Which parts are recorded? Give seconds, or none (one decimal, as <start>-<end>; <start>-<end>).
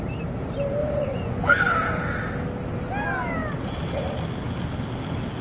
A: 0.0-0.8; 1.6-5.4